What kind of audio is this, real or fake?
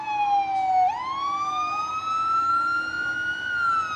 real